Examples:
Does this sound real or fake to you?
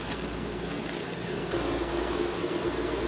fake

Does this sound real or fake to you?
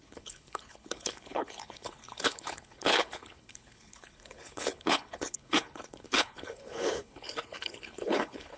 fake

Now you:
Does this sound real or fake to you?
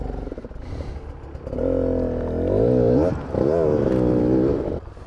real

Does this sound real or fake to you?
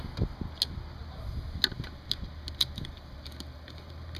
real